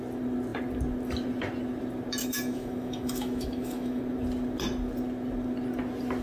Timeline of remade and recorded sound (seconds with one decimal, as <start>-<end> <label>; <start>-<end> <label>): 0.0-2.2 recorded; 2.2-4.0 remade; 4.0-6.2 recorded